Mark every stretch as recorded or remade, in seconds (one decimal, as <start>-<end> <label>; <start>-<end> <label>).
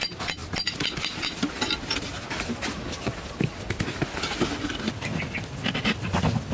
0.0-6.5 recorded